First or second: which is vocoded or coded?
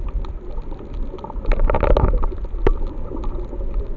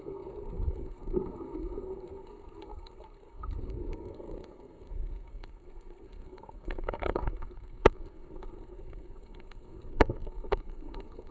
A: second